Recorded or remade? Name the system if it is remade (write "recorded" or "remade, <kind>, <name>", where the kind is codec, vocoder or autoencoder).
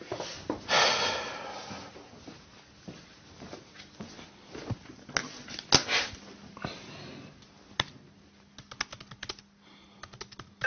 recorded